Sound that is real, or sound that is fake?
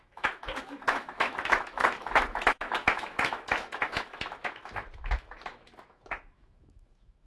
fake